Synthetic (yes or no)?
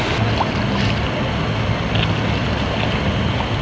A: no